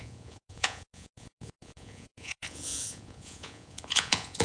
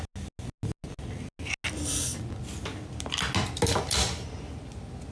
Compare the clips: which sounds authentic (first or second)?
second